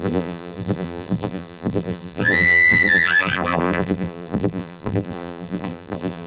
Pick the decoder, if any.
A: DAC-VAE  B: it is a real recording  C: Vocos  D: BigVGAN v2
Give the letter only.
D